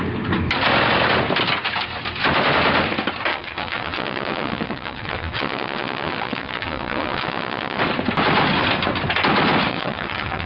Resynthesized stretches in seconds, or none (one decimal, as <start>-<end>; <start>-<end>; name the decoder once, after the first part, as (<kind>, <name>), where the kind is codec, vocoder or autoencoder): 3.3-7.8 (vocoder, WaveNeXt); 9.7-10.5